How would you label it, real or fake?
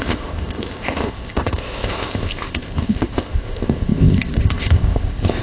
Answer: fake